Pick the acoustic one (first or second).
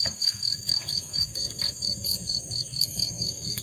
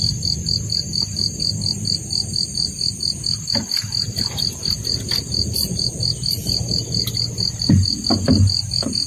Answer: second